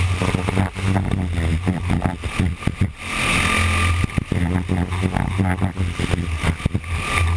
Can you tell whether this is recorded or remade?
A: recorded